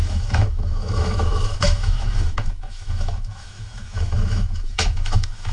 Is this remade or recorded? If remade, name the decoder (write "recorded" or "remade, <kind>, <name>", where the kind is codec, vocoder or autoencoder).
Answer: remade, autoencoder, DAC-VAE